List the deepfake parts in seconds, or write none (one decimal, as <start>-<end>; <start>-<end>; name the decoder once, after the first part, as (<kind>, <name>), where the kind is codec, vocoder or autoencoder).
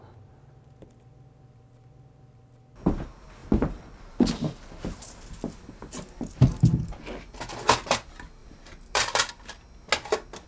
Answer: 8.4-9.3 (vocoder, BigVGAN v2)